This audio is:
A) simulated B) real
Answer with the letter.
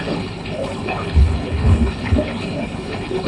A